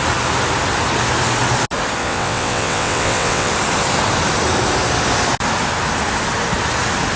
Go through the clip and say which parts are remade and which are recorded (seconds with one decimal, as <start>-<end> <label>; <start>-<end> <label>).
0.0-2.0 recorded; 2.0-3.5 remade; 3.5-7.2 recorded